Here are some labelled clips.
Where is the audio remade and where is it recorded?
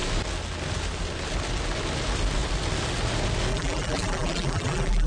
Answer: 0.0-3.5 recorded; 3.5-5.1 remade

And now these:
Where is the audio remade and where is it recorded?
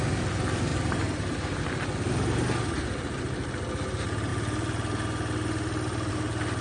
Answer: 0.0-0.7 recorded; 0.7-1.6 remade; 1.6-6.6 recorded